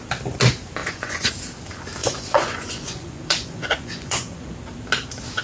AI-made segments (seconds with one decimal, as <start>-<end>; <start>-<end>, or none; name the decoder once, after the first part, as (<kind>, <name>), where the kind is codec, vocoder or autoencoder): 0.8-1.3 (vocoder, Vocos); 2.0-4.5